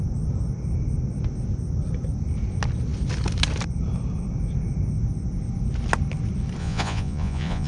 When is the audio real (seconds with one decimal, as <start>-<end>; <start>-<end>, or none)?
0.0-6.6